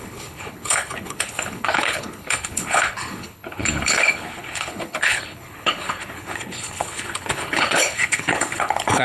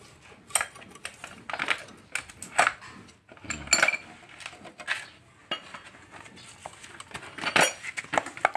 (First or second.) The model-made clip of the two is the first